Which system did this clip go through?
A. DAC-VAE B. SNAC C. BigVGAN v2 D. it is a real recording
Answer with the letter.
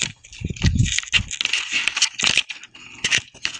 D